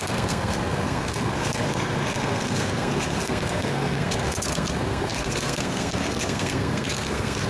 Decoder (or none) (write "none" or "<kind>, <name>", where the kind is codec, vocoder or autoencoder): codec, SNAC